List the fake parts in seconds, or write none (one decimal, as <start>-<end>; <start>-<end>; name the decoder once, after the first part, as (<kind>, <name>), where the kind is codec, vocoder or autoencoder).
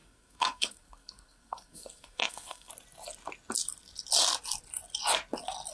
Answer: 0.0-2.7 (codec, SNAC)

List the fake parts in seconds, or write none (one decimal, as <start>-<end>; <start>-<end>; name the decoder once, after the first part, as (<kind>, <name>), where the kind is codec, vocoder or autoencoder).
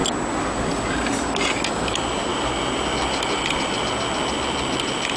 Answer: none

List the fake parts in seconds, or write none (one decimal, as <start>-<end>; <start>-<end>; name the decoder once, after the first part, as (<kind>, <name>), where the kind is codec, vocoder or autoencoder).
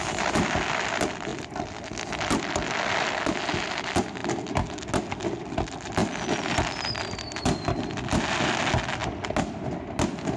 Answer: none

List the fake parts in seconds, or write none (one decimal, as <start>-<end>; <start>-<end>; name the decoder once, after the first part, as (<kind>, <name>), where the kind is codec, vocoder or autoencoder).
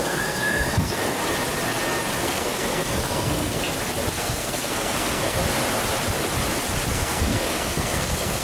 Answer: 0.0-1.2 (codec, SNAC); 2.2-3.6; 4.1-5.4; 6.9-8.4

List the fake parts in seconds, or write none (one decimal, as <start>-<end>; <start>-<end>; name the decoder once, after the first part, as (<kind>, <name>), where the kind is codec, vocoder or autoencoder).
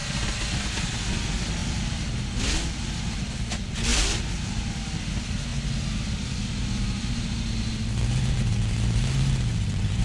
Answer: none